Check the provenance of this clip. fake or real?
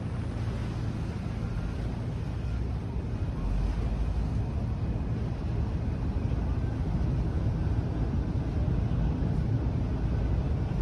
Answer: real